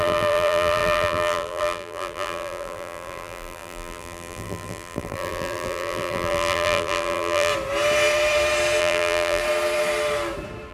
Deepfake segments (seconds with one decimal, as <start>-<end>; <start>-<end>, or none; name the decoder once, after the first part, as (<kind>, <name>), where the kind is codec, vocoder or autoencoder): 0.0-7.5 (vocoder, BigVGAN v2); 8.8-9.4